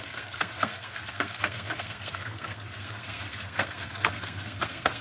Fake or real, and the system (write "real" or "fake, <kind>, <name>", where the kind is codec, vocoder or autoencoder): fake, codec, SNAC